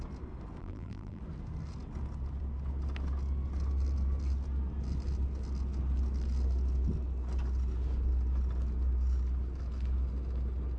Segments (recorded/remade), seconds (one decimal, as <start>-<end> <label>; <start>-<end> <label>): 0.0-0.6 recorded; 0.6-1.2 remade; 1.2-10.8 recorded